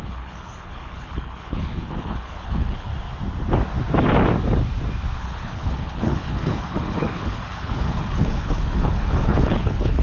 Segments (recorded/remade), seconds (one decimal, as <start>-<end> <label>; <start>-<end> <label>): 0.0-2.9 remade; 2.9-5.2 recorded; 5.2-10.0 remade